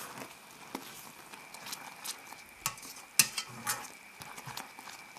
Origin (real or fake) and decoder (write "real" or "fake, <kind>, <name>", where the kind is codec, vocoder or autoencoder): real